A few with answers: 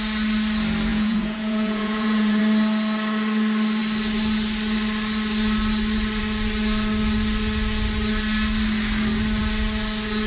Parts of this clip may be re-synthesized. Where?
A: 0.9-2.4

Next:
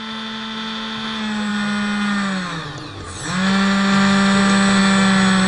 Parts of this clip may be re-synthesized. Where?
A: none

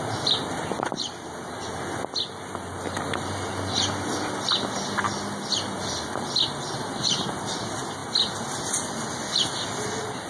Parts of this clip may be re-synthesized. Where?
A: none

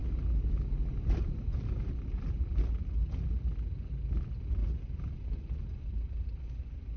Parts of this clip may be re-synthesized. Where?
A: 0.9-2.0; 4.6-5.9

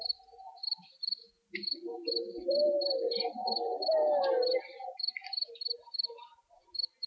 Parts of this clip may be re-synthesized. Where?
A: 0.0-1.2; 5.5-7.1

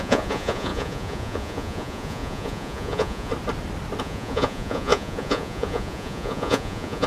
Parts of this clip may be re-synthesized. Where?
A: 0.0-3.3; 4.0-7.1

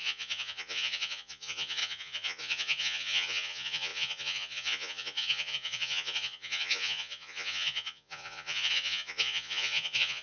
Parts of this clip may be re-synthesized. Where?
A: 0.0-10.2

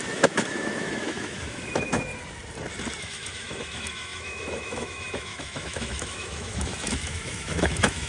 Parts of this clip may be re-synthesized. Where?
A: 0.0-2.1; 3.0-8.1